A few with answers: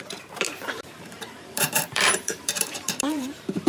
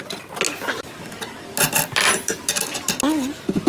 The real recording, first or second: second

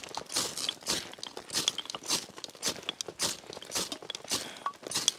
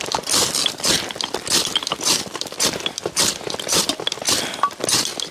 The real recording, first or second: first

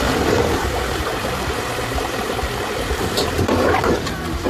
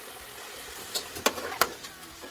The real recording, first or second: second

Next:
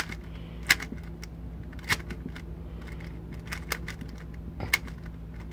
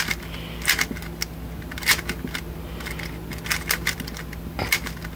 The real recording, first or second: first